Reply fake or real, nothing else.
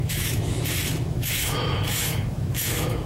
fake